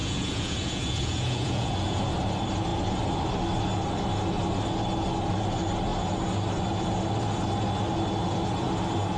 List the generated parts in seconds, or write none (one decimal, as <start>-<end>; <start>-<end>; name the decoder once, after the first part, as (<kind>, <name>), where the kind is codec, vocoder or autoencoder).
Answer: 0.0-2.0 (vocoder, Vocos)